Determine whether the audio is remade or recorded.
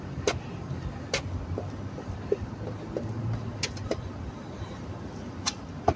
recorded